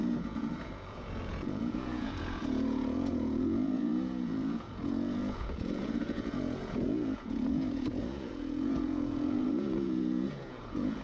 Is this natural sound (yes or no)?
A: no